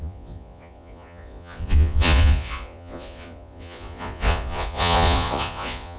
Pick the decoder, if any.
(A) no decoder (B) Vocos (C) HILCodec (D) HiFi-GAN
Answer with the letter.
B